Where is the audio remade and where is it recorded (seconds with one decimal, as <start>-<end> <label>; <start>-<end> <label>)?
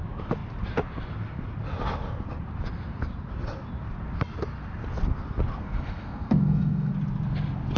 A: 0.0-5.6 recorded; 5.6-6.9 remade; 6.9-7.8 recorded